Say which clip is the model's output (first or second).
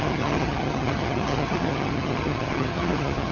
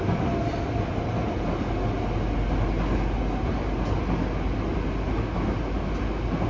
first